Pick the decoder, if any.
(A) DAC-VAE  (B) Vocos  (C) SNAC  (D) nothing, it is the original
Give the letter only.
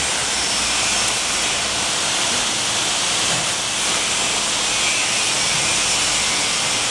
D